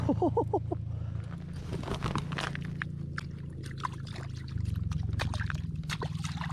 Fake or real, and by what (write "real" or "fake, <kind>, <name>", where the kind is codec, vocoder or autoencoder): real